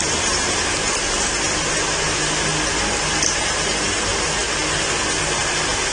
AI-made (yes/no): no